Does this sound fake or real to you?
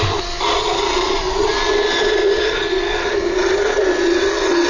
real